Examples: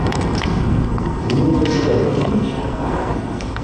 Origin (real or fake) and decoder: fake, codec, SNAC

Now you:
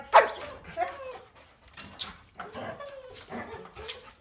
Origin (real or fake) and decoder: real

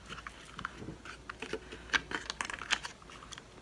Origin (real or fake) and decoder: real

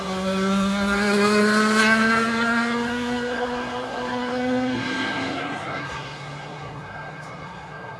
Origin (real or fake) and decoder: fake, codec, SNAC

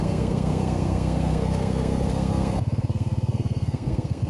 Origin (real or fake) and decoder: fake, codec, SNAC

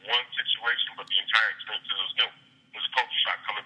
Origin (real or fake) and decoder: real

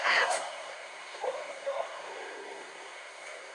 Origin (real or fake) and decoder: fake, codec, SNAC